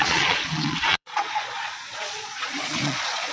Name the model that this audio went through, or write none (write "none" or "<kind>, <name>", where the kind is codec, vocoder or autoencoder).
vocoder, Vocos